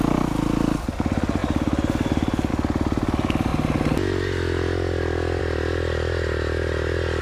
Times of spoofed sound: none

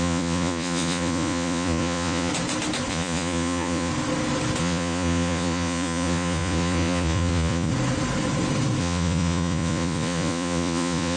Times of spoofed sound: 0.0-2.3; 2.9-3.9; 4.6-7.7; 8.8-11.2

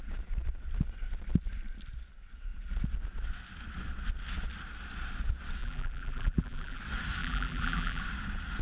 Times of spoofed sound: 5.6-6.8; 7.2-8.0

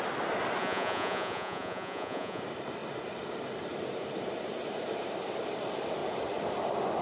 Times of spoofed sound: 0.6-2.4

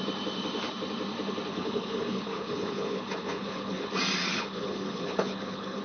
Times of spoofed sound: 1.5-3.9; 4.3-5.8

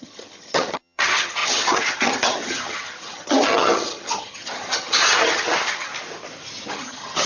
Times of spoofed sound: 0.0-5.9; 6.7-7.3

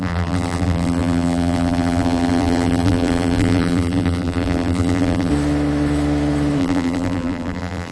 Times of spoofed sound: 0.0-5.3; 6.6-7.9

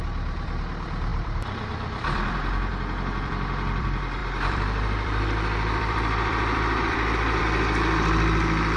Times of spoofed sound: 0.0-2.7; 3.2-8.8